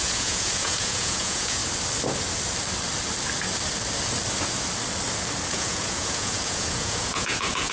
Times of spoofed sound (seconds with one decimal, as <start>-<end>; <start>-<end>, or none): 0.0-1.6; 5.5-7.7